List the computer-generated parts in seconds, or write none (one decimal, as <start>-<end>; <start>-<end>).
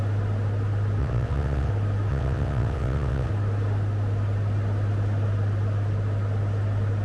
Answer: 1.0-1.7; 2.1-3.3